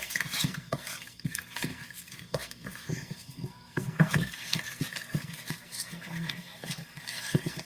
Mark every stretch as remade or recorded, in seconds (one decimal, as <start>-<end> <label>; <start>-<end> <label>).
0.0-7.6 remade